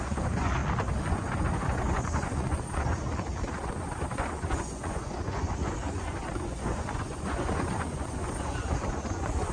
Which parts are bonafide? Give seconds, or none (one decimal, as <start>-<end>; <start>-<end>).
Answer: 0.6-1.1; 3.0-3.6